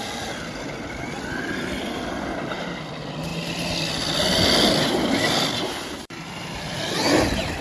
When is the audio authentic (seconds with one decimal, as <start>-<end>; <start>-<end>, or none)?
0.0-7.6